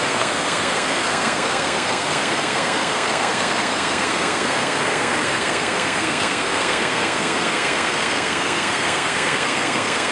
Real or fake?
fake